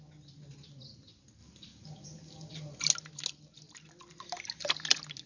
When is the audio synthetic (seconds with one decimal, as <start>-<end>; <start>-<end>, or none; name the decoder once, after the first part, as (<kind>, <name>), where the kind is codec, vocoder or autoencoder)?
1.4-2.9 (vocoder, BigVGAN v2)